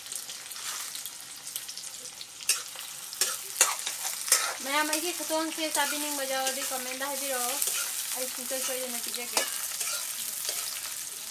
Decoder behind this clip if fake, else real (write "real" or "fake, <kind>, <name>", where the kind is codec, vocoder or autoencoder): real